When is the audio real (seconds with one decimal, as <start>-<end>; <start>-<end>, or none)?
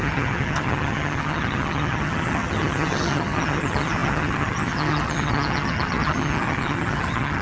none